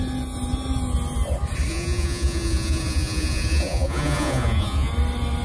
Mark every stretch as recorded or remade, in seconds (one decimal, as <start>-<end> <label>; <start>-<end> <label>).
0.0-1.7 recorded; 1.7-4.9 remade; 4.9-5.4 recorded